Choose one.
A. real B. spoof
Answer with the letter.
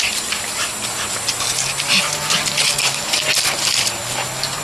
B